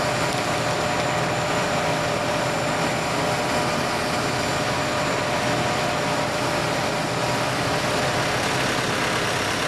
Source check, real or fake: real